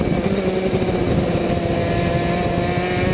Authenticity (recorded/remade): recorded